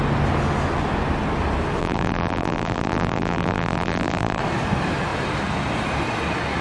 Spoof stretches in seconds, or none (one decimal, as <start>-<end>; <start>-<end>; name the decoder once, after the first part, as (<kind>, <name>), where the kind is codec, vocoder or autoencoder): 1.8-4.4 (vocoder, BigVGAN v2)